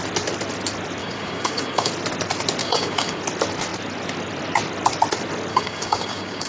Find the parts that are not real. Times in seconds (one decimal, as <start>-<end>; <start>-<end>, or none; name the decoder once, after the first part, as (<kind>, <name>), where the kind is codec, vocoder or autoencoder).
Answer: 1.0-1.9 (codec, DAC); 2.6-3.2; 5.5-6.5